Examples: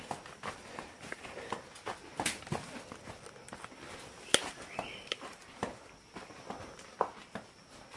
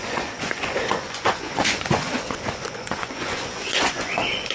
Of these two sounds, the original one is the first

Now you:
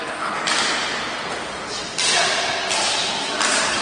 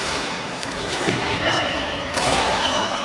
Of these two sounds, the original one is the first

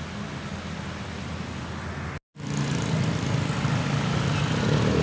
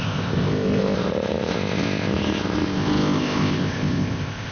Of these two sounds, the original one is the first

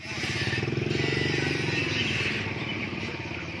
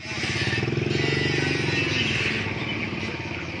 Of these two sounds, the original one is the second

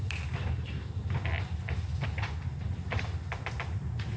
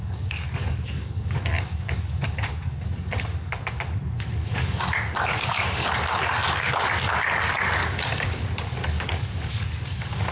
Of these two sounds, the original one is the first